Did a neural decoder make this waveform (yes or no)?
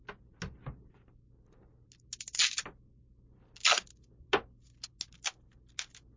no